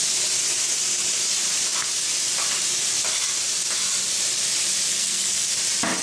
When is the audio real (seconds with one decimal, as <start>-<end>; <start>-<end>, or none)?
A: 0.0-4.9; 5.5-6.0